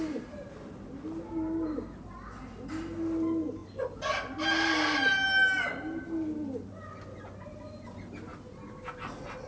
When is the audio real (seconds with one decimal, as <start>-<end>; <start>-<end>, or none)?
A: 0.0-9.5